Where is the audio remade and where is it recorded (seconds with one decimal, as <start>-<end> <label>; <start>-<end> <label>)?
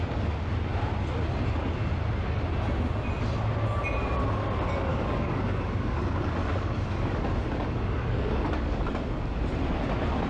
0.0-4.9 recorded; 4.9-9.4 remade; 9.4-10.3 recorded